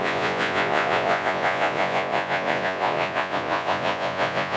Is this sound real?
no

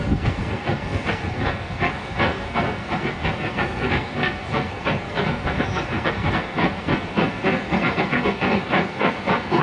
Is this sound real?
no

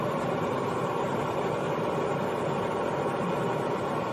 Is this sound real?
yes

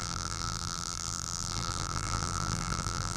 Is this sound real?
no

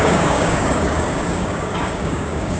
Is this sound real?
no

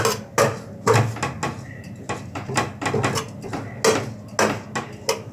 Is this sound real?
yes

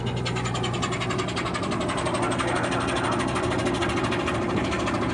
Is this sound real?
yes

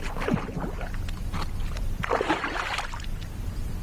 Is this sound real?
yes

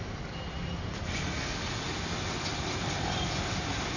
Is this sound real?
yes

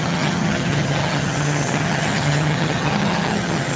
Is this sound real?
no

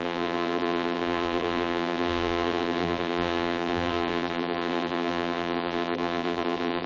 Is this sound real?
no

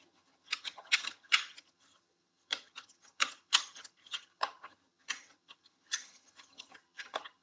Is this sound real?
no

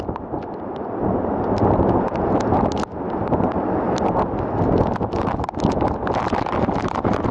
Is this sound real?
yes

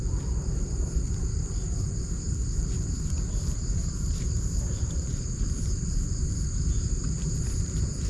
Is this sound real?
no